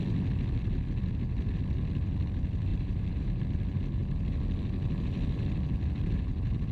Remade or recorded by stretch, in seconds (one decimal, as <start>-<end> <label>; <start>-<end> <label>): 0.0-2.7 recorded; 2.7-3.4 remade; 3.4-6.7 recorded